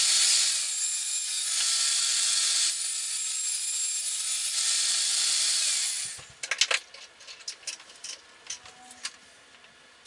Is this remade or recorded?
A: recorded